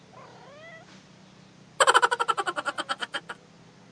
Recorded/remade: recorded